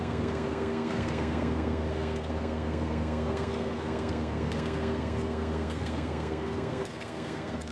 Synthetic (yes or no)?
yes